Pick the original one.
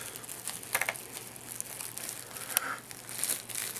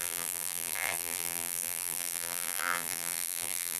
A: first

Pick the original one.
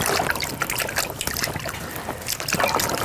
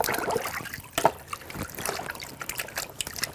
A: second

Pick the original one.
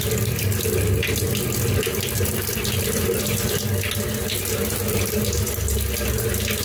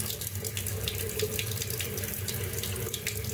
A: first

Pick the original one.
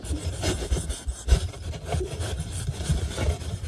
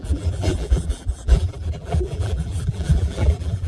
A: first